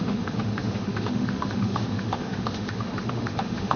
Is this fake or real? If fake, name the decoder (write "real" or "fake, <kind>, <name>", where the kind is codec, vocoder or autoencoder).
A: fake, autoencoder, DAC-VAE